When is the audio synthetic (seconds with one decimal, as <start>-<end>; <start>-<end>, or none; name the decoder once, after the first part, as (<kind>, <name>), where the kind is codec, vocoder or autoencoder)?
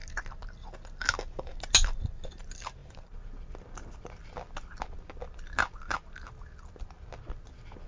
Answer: none